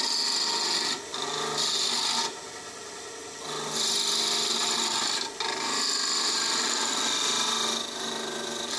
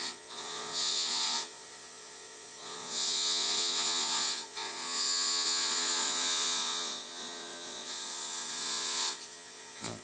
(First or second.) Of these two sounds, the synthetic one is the second